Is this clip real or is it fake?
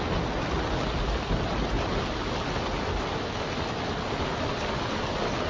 real